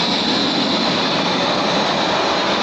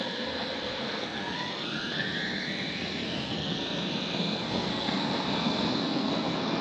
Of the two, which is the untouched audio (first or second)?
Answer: first